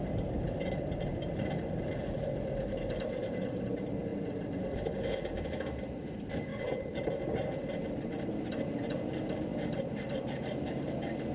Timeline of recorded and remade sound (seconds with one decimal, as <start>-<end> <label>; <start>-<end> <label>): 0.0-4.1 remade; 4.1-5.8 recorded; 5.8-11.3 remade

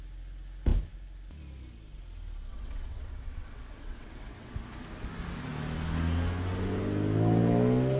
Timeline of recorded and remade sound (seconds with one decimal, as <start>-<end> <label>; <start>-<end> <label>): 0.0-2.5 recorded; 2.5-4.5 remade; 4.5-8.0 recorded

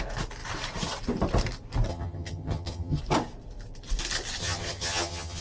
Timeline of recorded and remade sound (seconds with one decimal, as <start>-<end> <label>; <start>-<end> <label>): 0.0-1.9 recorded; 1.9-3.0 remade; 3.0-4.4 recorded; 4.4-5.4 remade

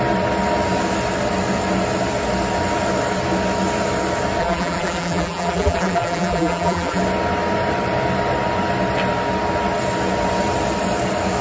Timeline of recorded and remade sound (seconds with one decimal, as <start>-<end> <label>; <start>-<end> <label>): 0.0-4.4 recorded; 4.4-7.0 remade; 7.0-11.4 recorded